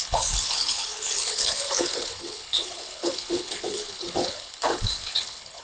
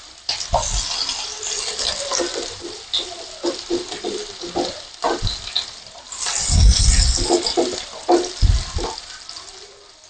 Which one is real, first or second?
second